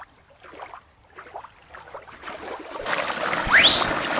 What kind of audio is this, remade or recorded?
recorded